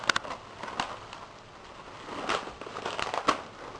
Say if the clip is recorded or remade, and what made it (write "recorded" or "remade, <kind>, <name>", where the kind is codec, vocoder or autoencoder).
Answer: recorded